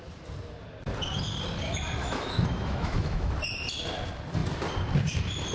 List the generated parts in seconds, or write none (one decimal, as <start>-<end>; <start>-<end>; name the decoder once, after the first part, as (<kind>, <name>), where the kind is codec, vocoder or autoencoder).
2.0-3.3 (autoencoder, DAC-VAE)